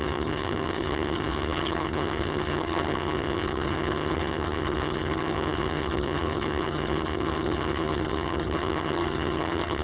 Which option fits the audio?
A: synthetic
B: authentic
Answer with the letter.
A